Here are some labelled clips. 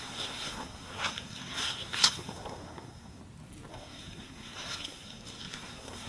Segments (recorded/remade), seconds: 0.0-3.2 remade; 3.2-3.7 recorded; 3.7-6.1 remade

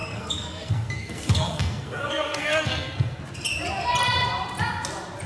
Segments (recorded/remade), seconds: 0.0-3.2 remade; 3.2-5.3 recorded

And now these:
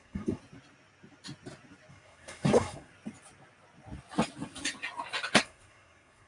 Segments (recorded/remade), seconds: 0.0-0.4 remade; 0.4-1.9 recorded; 1.9-2.9 remade; 2.9-5.4 recorded; 5.4-6.3 remade

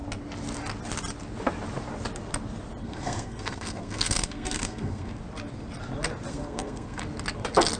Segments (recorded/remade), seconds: 0.0-2.8 recorded; 2.8-5.1 remade; 5.1-6.3 recorded; 6.3-7.0 remade; 7.0-7.8 recorded

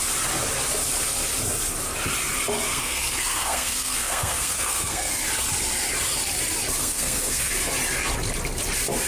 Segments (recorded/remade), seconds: 0.0-2.7 recorded; 2.7-5.2 remade; 5.2-6.8 recorded; 6.8-7.5 remade; 7.5-9.1 recorded